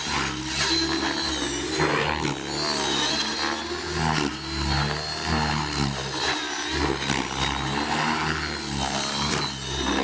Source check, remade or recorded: recorded